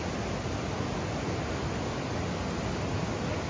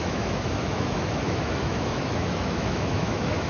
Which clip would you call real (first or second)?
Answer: first